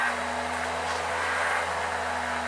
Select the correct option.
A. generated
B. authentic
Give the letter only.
B